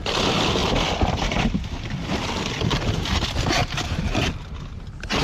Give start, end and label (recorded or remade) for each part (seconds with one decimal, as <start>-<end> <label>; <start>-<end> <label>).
0.0-3.6 recorded; 3.6-4.3 remade; 4.3-5.2 recorded